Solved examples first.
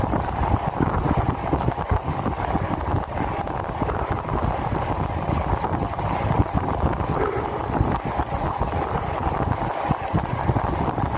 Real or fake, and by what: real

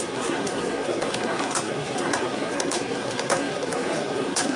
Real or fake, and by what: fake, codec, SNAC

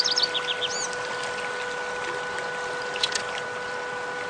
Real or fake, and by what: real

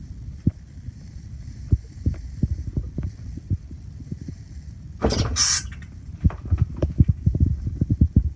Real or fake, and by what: fake, vocoder, BigVGAN v2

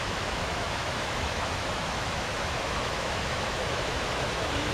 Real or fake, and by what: fake, autoencoder, DAC-VAE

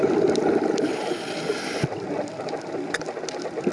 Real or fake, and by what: real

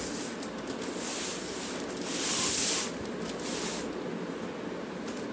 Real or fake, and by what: real